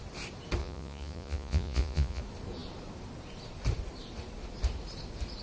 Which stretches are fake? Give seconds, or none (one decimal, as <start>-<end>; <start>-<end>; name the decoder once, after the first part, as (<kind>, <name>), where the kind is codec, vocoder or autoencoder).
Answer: 0.6-2.2 (vocoder, Vocos)